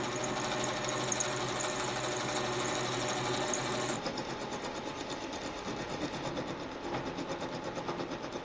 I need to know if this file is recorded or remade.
recorded